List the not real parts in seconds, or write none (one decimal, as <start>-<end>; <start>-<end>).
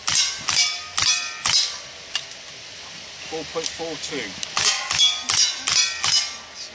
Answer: none